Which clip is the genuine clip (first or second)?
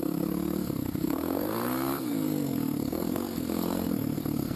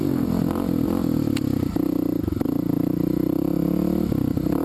second